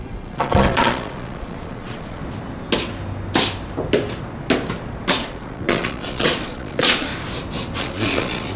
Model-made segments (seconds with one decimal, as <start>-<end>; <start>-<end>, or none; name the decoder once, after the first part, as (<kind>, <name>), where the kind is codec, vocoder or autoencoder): 0.0-2.2 (vocoder, Vocos); 5.1-7.1; 7.8-8.6